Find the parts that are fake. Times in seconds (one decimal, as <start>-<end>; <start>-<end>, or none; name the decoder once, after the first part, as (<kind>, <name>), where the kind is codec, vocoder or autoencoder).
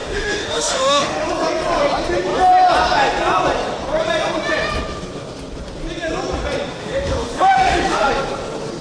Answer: 0.0-1.3 (autoencoder, DAC-VAE); 6.8-8.1